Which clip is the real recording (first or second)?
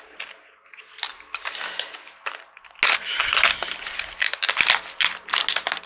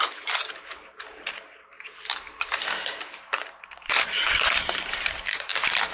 first